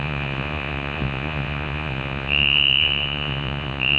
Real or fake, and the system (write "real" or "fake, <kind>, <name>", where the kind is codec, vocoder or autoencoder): fake, vocoder, Vocos